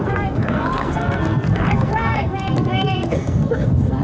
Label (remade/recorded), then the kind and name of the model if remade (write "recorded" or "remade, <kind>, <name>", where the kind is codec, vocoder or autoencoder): remade, codec, SNAC